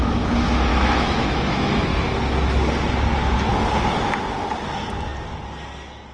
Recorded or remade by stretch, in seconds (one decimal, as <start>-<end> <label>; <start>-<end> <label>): 0.0-0.7 recorded; 0.7-1.9 remade; 1.9-6.1 recorded